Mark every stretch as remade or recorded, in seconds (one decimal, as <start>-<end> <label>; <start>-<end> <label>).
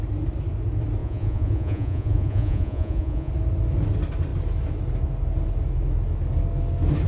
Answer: 0.0-1.0 recorded; 1.0-3.3 remade; 3.3-7.1 recorded